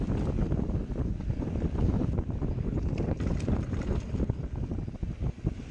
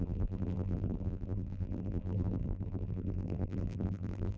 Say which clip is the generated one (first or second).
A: second